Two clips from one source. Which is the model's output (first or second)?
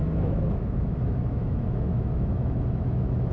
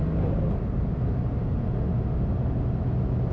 first